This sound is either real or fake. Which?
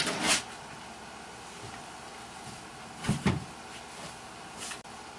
real